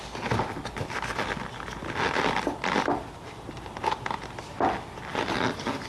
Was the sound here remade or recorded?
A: recorded